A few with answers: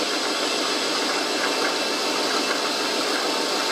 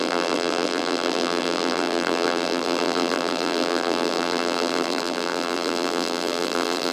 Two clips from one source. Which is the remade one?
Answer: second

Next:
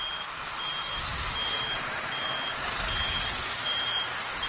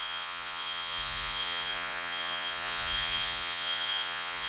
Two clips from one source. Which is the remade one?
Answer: second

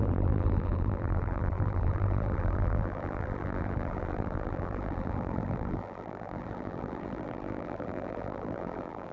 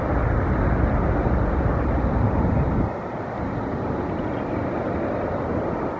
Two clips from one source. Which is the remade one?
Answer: first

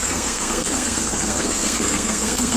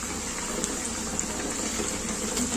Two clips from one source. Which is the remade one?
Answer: first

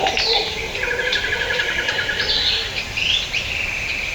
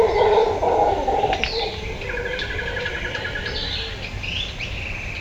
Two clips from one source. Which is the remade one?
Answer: first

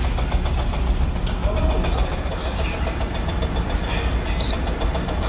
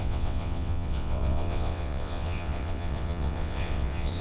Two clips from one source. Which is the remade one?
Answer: second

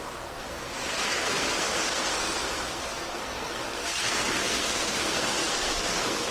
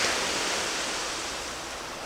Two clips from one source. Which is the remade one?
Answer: first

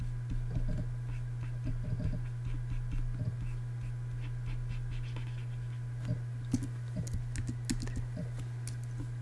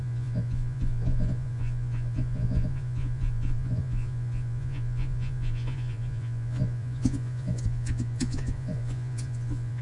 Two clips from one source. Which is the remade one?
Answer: second